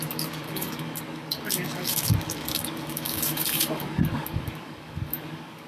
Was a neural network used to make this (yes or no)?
yes